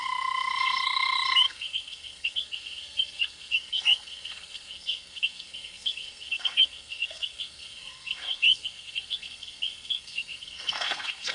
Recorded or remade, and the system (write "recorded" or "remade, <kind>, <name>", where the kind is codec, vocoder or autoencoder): remade, codec, SNAC